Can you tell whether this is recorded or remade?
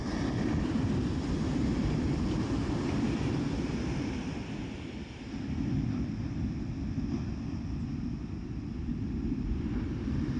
recorded